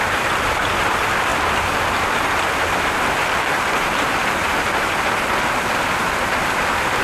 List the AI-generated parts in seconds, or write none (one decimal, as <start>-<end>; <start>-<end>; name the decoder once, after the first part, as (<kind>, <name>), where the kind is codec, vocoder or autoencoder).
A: 0.0-4.5 (vocoder, BigVGAN v2); 6.3-7.0